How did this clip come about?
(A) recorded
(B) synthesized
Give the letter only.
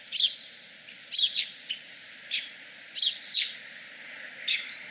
A